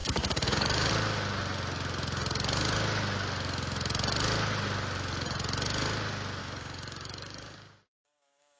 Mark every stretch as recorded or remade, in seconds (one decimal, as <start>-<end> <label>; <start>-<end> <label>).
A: 0.0-0.9 remade; 0.9-6.4 recorded; 6.4-8.6 remade